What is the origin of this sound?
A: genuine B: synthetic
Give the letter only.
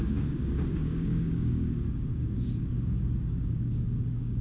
B